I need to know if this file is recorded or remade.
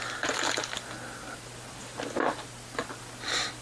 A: recorded